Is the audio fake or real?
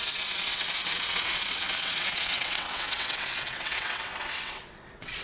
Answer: fake